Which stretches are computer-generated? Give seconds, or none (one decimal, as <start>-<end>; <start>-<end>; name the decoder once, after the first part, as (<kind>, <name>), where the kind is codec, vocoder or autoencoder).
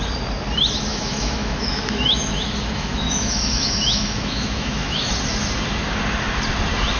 0.9-5.1 (autoencoder, DAC-VAE)